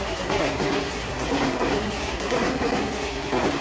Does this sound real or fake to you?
fake